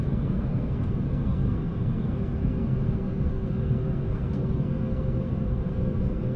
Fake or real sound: fake